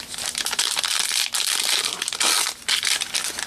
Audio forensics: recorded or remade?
recorded